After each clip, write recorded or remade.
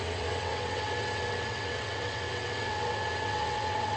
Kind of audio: remade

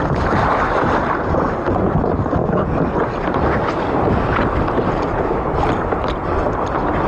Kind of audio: recorded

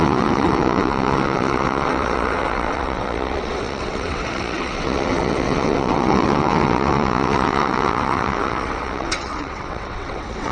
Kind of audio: remade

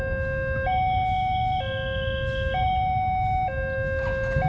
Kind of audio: recorded